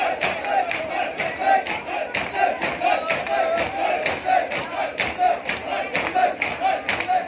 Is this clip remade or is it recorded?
recorded